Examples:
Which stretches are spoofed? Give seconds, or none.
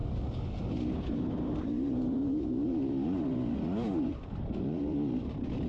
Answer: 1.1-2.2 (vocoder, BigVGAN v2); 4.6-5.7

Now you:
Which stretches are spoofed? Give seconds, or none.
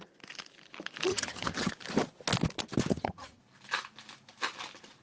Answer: 1.1-1.7 (vocoder, HiFi-GAN); 2.9-3.4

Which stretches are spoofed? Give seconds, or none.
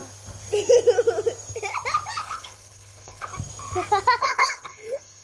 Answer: 2.2-3.3 (codec, HILCodec); 4.2-5.2